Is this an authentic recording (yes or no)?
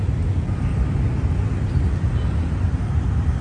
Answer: yes